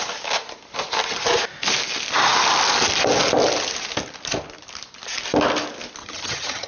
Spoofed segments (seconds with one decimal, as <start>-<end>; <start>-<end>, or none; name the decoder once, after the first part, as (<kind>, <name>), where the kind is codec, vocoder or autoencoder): 6.0-6.7 (vocoder, HiFi-GAN)